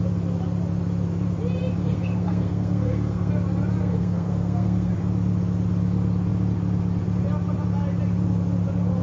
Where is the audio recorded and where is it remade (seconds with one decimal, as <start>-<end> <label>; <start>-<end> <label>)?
0.0-1.8 recorded; 1.8-3.3 remade; 3.3-3.8 recorded; 3.8-4.9 remade; 4.9-9.0 recorded